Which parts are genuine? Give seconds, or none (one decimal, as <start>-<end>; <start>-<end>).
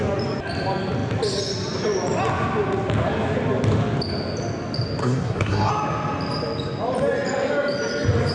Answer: 0.0-5.0; 5.7-8.3